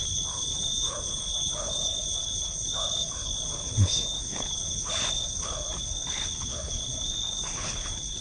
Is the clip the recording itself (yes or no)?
no